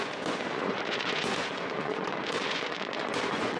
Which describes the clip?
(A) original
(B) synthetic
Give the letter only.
B